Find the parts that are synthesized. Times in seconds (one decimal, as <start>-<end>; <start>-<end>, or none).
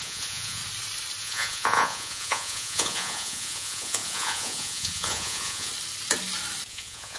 0.0-0.6; 1.2-5.7; 6.7-7.2